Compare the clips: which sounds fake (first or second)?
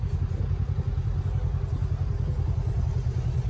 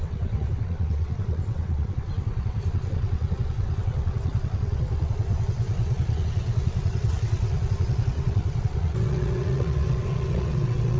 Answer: second